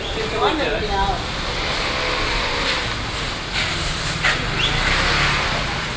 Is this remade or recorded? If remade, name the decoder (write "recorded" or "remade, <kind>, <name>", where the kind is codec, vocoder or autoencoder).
recorded